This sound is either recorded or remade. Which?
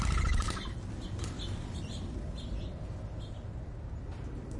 recorded